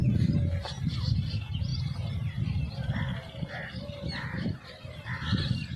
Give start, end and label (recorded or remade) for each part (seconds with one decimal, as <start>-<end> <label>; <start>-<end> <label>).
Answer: 0.0-1.7 recorded; 1.7-2.6 remade; 2.6-5.8 recorded

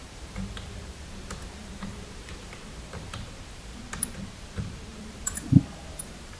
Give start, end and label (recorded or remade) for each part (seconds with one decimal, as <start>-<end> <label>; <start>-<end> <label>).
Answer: 0.0-3.8 remade; 3.8-4.9 recorded; 4.9-6.4 remade

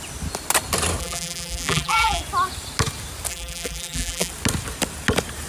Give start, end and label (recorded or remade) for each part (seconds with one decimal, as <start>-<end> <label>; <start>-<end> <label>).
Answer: 0.0-1.0 recorded; 1.0-2.2 remade; 2.2-3.3 recorded; 3.3-4.3 remade; 4.3-5.5 recorded